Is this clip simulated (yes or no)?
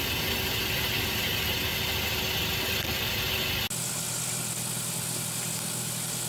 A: no